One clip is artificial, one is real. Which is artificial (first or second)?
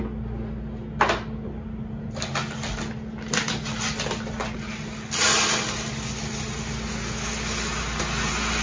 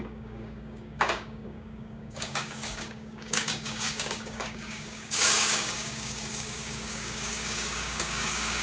second